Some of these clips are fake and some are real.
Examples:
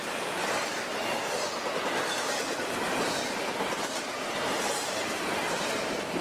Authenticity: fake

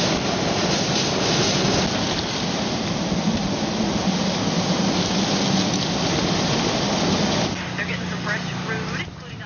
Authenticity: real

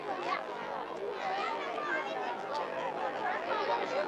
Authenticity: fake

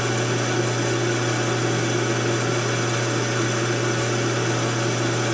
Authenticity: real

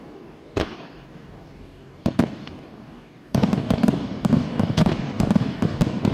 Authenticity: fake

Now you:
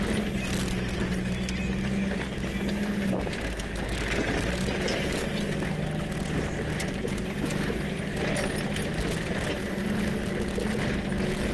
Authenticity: real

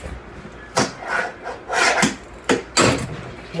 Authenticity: real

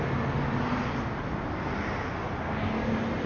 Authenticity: real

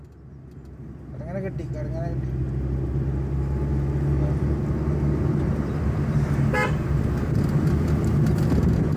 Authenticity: real